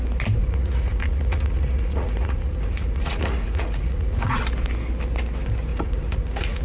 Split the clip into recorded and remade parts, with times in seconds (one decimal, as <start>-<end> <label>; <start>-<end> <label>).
0.0-0.4 recorded; 0.4-4.4 remade; 4.4-5.7 recorded; 5.7-6.6 remade